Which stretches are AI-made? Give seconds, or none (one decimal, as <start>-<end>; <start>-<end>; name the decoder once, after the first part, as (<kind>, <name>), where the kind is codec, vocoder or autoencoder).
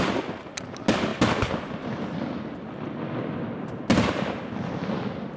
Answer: none